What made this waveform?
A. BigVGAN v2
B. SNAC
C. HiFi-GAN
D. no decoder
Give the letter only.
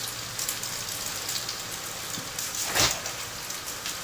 D